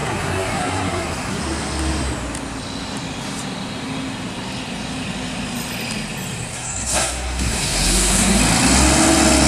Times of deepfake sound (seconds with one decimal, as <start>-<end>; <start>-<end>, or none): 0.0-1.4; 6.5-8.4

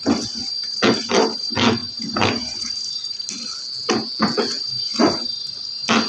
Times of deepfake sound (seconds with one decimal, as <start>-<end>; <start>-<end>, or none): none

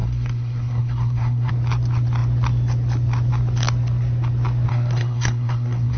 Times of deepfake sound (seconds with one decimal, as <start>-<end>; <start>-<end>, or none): 0.0-1.5; 4.7-6.0